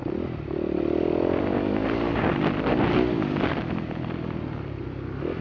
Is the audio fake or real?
real